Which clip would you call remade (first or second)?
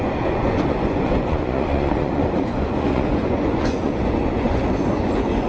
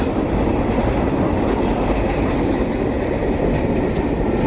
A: first